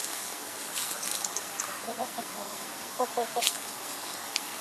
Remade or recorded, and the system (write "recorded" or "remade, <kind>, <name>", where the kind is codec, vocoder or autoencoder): remade, codec, SNAC